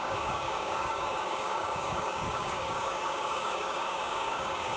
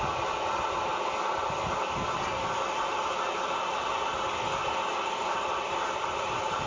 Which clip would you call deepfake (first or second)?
first